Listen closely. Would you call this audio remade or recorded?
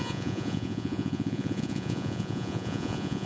remade